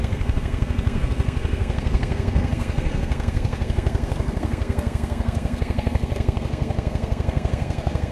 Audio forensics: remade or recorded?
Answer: remade